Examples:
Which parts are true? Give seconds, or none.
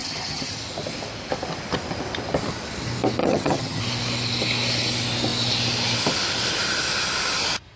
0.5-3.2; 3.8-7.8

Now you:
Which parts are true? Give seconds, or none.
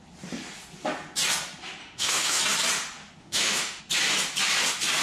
0.0-1.8; 2.4-3.2; 3.8-5.0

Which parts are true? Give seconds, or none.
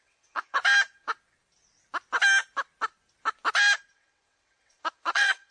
0.6-3.9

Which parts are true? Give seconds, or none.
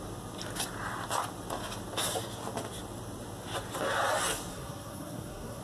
0.0-4.5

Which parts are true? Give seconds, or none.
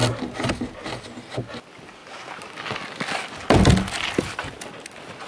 0.0-5.3